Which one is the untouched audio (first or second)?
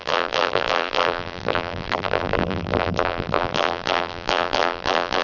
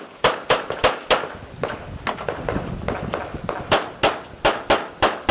second